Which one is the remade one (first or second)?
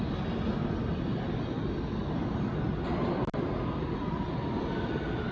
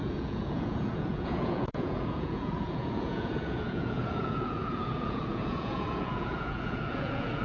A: second